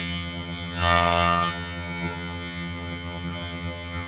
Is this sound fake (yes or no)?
yes